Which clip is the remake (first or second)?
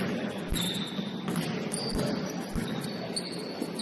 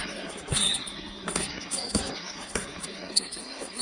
second